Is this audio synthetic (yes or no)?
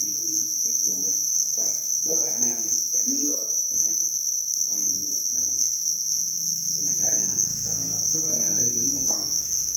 yes